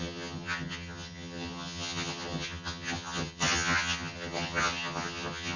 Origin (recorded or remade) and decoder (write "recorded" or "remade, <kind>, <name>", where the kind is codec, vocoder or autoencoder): remade, vocoder, HiFi-GAN